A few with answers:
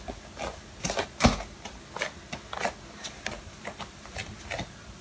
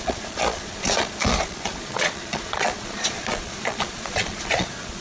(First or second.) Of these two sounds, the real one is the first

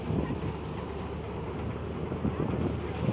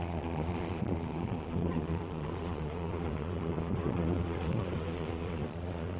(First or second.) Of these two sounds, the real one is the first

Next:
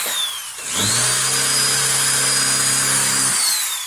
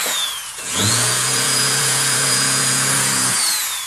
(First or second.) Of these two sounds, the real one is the first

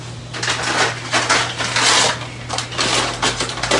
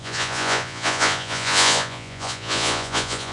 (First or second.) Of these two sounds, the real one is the first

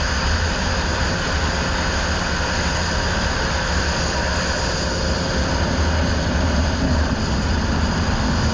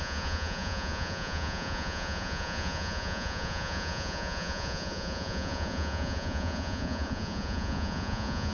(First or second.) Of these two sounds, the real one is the first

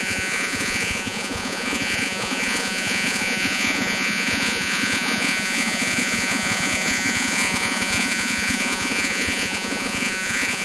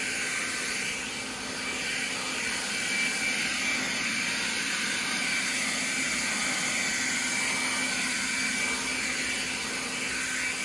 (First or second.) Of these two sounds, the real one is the second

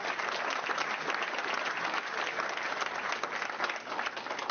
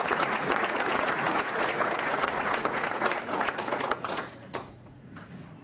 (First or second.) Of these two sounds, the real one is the first